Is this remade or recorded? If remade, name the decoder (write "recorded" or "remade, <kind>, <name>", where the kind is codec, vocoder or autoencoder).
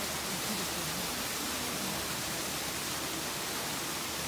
recorded